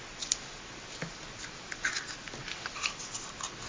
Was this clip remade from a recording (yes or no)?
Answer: no